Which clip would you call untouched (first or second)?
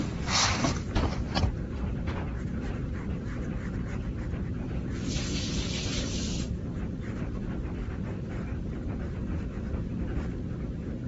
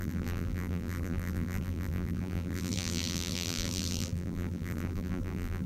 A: first